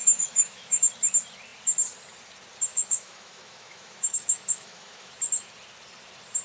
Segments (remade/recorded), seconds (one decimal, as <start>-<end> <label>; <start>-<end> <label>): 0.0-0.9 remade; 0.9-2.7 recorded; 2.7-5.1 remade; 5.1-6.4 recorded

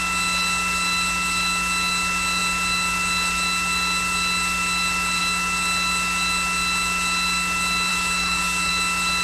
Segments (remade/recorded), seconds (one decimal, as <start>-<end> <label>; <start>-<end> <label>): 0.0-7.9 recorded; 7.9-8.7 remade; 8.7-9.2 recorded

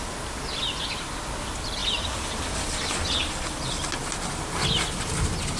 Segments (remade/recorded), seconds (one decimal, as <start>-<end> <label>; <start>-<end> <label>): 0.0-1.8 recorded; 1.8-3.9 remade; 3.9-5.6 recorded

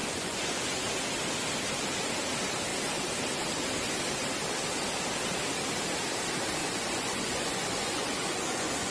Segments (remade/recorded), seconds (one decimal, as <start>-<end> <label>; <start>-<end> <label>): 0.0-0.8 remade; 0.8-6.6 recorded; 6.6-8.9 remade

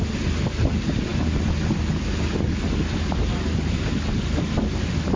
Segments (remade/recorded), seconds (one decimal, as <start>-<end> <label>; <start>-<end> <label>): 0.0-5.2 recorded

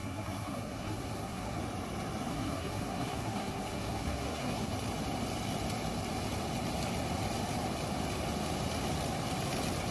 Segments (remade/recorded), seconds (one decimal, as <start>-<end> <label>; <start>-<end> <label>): 0.0-1.6 remade; 1.6-2.3 recorded; 2.3-4.7 remade; 4.7-9.9 recorded

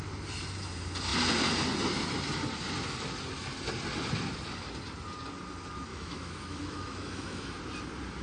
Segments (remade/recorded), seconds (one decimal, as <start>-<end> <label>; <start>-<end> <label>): 0.0-5.9 recorded; 5.9-7.6 remade; 7.6-8.2 recorded

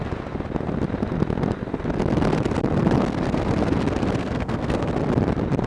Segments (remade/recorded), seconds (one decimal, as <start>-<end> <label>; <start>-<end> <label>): 0.0-4.2 recorded; 4.2-4.9 remade; 4.9-5.7 recorded